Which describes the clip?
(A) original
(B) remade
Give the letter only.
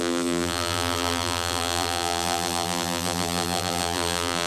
B